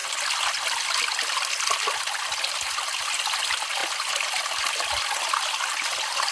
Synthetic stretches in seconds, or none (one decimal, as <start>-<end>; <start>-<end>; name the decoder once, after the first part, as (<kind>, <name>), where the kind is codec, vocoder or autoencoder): none